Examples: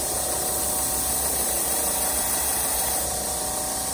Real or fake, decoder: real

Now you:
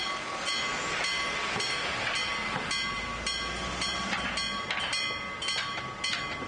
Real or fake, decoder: real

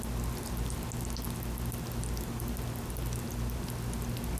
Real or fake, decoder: real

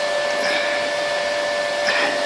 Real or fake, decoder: real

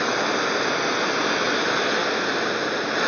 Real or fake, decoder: real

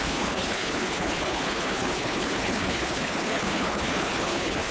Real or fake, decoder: fake, codec, HILCodec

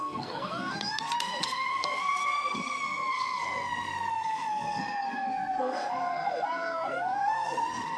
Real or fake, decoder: fake, codec, SNAC